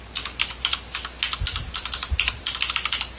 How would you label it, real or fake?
real